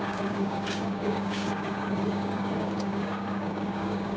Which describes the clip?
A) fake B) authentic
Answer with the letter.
A